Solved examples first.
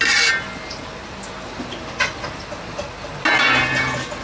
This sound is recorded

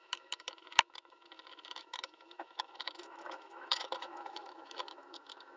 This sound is remade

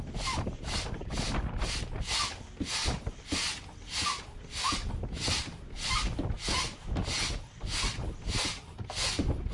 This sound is recorded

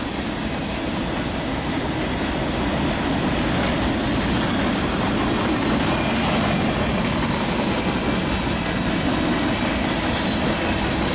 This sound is recorded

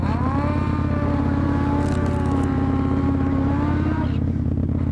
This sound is recorded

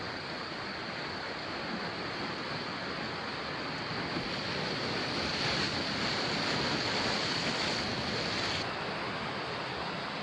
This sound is recorded